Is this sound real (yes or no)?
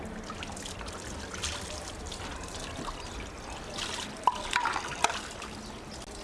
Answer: yes